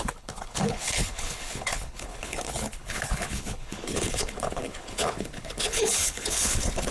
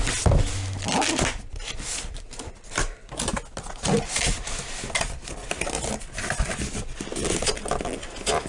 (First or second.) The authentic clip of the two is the second